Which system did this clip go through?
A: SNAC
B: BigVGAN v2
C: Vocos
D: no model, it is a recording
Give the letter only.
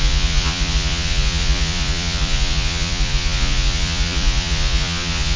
C